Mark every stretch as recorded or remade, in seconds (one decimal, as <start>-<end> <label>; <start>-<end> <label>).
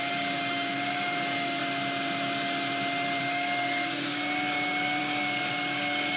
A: 0.0-1.6 remade; 1.6-3.2 recorded; 3.2-6.2 remade